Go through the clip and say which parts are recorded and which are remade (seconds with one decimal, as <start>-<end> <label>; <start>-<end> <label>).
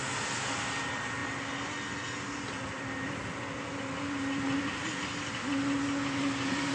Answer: 0.0-6.7 recorded